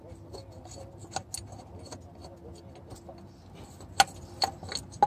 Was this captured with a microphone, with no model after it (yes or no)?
yes